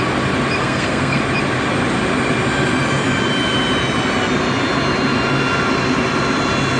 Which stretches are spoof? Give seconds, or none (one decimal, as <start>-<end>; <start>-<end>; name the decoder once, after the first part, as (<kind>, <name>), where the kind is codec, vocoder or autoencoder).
0.6-1.2 (codec, SNAC)

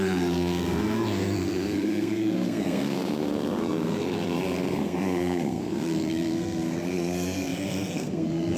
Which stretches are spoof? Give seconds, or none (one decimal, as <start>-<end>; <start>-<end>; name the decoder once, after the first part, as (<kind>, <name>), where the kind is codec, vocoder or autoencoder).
0.0-8.6 (codec, SNAC)